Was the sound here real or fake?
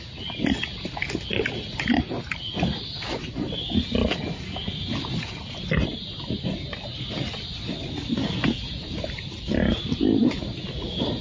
real